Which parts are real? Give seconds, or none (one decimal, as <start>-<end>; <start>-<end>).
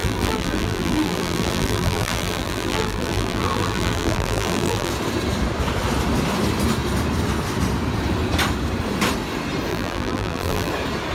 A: 4.9-9.7; 10.7-11.1